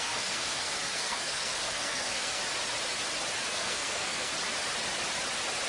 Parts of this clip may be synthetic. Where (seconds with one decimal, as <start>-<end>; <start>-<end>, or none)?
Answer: 0.0-2.4; 3.5-4.3